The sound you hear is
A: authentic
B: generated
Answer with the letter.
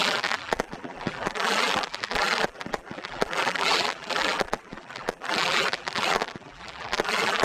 B